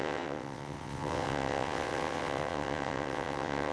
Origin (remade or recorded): remade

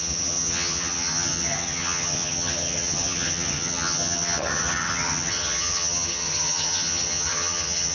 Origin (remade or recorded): remade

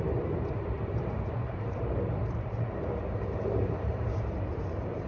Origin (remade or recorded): remade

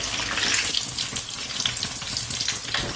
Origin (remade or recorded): recorded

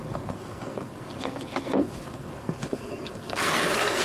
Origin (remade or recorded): remade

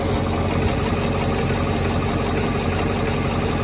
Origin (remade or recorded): recorded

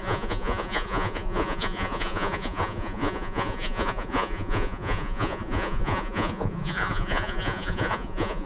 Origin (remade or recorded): remade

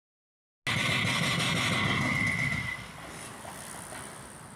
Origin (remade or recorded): recorded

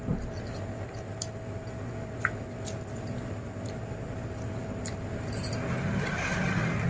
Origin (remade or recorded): recorded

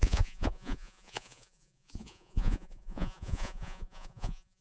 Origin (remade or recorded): remade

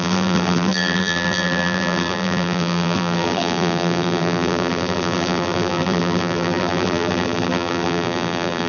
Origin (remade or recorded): remade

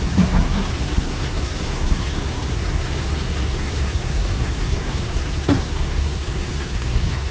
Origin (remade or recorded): remade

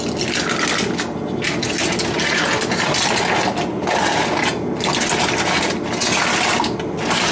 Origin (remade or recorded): recorded